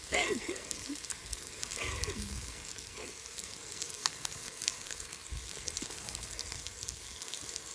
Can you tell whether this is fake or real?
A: fake